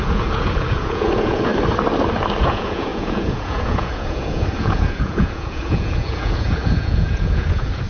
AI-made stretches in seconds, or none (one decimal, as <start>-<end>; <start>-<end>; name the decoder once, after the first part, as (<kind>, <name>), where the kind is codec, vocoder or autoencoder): 0.0-1.5 (vocoder, Vocos); 2.4-7.9